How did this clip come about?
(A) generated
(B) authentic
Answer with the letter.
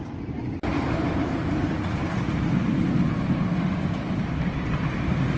B